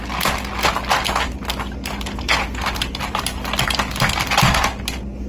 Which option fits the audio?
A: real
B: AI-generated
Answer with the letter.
A